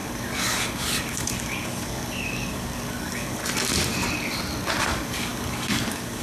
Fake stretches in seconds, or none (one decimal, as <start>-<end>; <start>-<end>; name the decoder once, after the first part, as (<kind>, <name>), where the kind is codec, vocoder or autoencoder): 0.0-3.4 (codec, DAC); 4.8-6.2